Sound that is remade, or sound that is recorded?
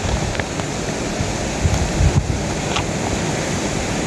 recorded